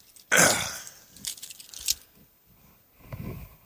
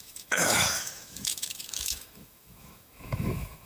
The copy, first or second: second